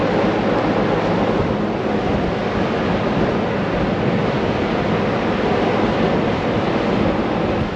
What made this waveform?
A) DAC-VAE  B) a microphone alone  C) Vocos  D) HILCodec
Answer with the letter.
B